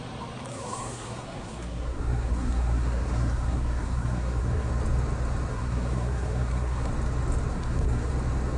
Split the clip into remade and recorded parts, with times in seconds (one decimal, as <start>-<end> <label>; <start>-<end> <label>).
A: 0.0-0.5 recorded; 0.5-4.7 remade; 4.7-5.5 recorded; 5.5-6.9 remade; 6.9-7.5 recorded; 7.5-8.1 remade; 8.1-8.6 recorded